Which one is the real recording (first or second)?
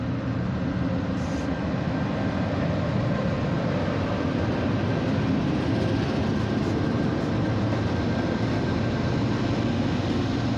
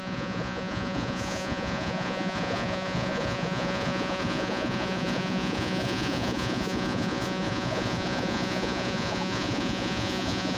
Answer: first